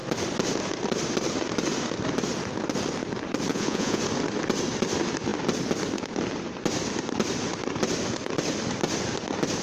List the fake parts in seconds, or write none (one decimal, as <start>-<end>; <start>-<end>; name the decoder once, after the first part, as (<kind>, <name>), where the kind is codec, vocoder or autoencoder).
3.5-4.0 (vocoder, Vocos)